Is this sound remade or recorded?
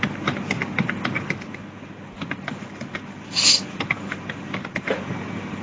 recorded